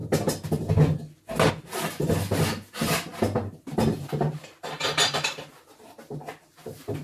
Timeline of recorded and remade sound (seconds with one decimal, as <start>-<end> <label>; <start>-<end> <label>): 0.0-7.0 recorded